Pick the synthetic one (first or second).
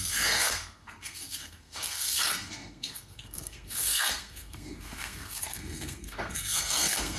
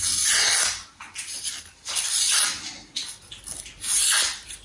first